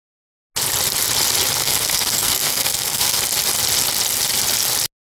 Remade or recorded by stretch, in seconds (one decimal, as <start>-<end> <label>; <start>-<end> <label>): 0.0-1.6 recorded; 1.6-3.2 remade; 3.2-5.1 recorded